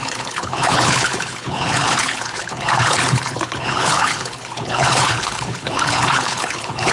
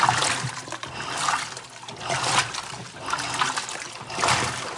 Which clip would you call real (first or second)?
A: second